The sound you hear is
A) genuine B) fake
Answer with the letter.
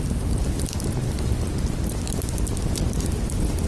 A